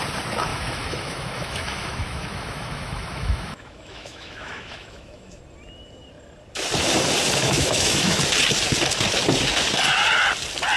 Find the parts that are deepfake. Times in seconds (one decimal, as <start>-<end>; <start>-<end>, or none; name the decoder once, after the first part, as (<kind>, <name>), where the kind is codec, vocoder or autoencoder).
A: 0.5-5.4 (autoencoder, DAC-VAE); 7.4-8.2